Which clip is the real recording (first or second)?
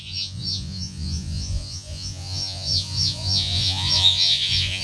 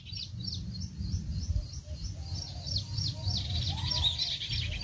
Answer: second